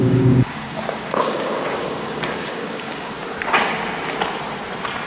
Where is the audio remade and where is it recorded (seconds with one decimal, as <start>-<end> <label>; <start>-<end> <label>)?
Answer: 0.0-3.1 remade; 3.1-5.1 recorded